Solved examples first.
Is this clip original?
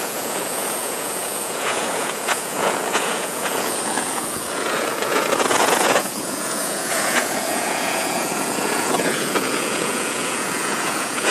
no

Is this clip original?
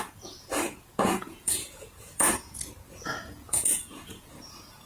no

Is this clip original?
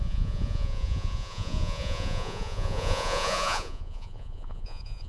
no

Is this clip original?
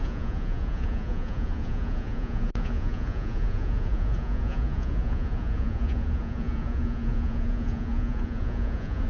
no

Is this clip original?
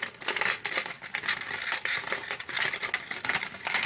yes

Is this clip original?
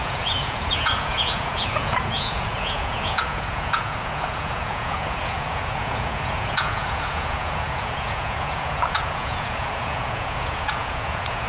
no